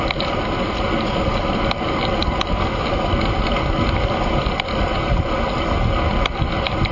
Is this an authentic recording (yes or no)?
yes